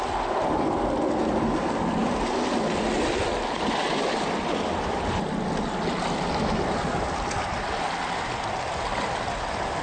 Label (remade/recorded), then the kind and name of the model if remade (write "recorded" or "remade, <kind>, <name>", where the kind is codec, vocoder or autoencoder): recorded